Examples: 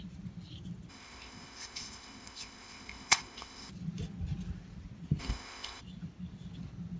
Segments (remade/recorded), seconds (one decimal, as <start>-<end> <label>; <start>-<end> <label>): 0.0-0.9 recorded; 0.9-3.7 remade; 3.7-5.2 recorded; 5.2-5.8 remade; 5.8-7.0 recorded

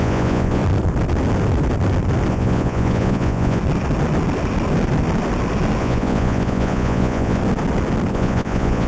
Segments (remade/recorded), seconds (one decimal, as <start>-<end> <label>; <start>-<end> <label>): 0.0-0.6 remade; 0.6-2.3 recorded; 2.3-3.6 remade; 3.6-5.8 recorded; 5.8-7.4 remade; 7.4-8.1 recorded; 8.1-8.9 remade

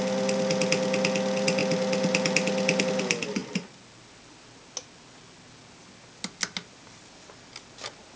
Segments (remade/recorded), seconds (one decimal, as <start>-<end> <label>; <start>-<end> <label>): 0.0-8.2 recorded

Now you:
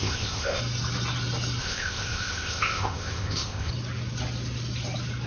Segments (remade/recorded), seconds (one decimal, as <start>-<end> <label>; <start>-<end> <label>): 0.0-0.6 remade; 0.6-1.6 recorded; 1.6-3.7 remade; 3.7-5.3 recorded

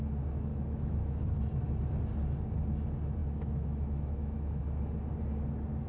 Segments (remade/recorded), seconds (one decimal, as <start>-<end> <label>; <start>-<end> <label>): 0.0-0.5 recorded; 0.5-1.2 remade; 1.2-3.2 recorded; 3.2-4.6 remade; 4.6-5.9 recorded

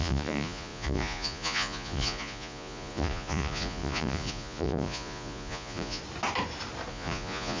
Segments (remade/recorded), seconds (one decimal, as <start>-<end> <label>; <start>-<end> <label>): 0.0-6.0 remade; 6.0-6.9 recorded; 6.9-7.6 remade

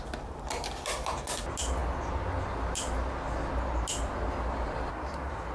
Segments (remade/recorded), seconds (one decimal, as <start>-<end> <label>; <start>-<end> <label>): 0.0-5.5 recorded